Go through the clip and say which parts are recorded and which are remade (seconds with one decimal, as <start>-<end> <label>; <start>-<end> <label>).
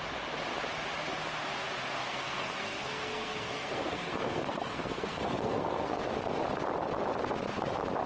0.0-2.0 recorded; 2.0-6.0 remade; 6.0-8.1 recorded